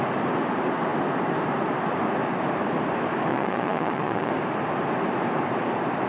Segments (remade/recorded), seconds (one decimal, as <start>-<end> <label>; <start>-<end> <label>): 0.0-3.3 recorded; 3.3-4.3 remade; 4.3-6.1 recorded